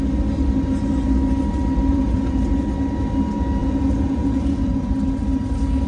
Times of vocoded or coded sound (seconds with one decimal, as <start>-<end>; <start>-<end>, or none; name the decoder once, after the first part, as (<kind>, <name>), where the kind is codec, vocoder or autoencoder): 1.9-2.4 (vocoder, Vocos); 3.6-4.9